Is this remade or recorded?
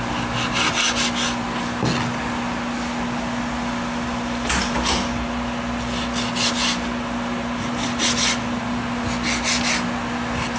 recorded